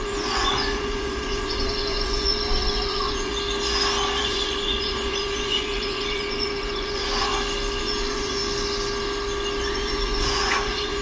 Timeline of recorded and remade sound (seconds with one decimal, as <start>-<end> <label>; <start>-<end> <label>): 0.0-3.3 remade; 3.3-4.2 recorded; 4.2-7.3 remade; 7.3-7.8 recorded; 7.8-8.4 remade; 8.4-9.7 recorded; 9.7-11.0 remade